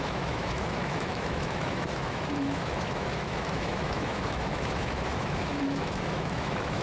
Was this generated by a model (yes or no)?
yes